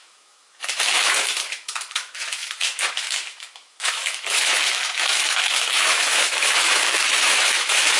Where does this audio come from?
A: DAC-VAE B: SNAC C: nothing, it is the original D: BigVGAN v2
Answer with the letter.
A